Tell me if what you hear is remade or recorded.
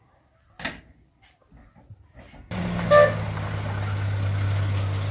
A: recorded